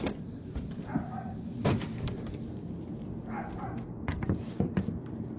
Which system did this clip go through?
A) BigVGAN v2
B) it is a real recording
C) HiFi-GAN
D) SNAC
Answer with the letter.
A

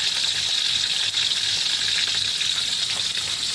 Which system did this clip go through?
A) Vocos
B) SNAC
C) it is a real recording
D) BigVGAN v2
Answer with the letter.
C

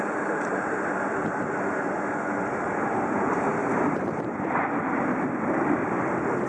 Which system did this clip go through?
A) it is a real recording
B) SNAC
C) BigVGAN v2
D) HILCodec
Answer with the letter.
C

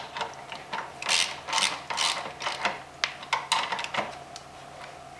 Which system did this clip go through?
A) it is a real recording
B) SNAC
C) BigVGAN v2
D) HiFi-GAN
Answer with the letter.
A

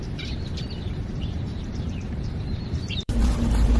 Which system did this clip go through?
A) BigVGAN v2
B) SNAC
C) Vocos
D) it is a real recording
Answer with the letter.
A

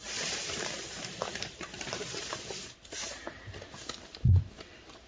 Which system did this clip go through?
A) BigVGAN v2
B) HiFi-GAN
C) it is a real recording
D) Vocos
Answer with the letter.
A